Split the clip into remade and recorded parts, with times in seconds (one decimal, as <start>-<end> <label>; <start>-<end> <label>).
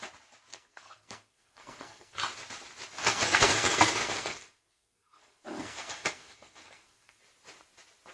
0.0-0.5 recorded; 0.5-2.2 remade; 2.2-3.0 recorded; 3.0-7.2 remade; 7.2-8.1 recorded